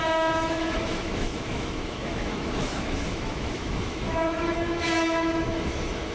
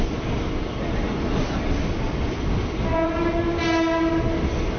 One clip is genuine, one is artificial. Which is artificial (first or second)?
first